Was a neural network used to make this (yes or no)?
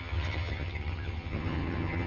yes